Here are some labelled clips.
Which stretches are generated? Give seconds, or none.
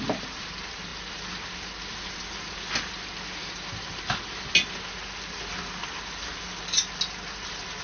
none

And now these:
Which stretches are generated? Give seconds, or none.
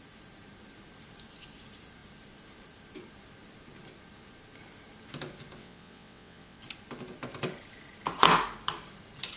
5.6-6.6 (vocoder, WaveNeXt)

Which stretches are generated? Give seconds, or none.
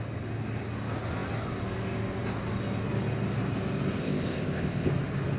4.0-4.9 (codec, ZipCodec)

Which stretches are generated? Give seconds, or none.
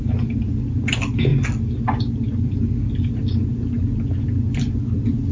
none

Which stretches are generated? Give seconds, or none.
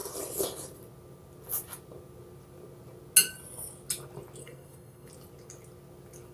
4.4-5.1 (codec, SNAC)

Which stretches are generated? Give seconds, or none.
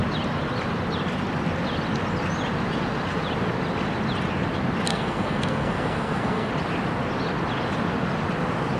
4.9-6.5 (codec, SNAC)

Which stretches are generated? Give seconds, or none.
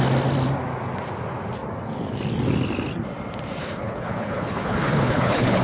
3.6-5.6 (codec, HILCodec)